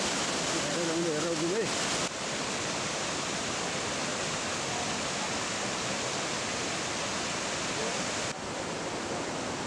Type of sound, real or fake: real